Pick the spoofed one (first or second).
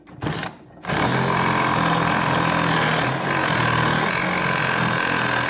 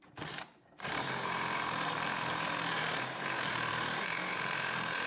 second